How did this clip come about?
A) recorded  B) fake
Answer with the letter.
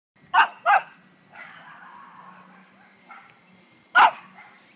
A